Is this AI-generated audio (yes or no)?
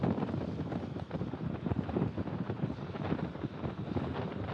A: yes